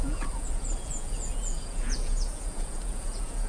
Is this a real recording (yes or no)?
no